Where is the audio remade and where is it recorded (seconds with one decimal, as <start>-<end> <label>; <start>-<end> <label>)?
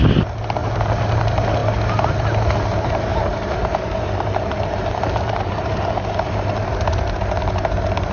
0.0-0.6 recorded; 0.6-1.2 remade; 1.2-3.1 recorded; 3.1-6.7 remade; 6.7-8.1 recorded